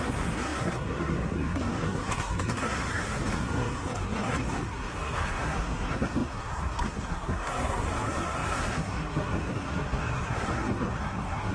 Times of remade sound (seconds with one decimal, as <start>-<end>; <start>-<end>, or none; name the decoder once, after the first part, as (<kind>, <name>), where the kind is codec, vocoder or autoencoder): 0.0-11.5 (codec, SNAC)